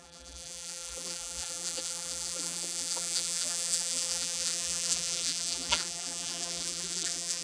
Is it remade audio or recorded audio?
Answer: remade